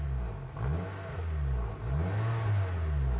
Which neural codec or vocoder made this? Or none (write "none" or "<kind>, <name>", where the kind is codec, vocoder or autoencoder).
none